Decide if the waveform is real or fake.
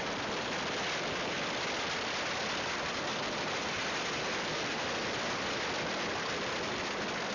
real